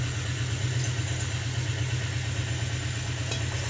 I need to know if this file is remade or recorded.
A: recorded